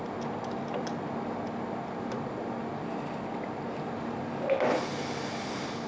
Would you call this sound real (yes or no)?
yes